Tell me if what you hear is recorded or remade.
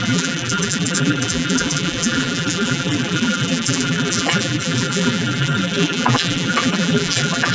remade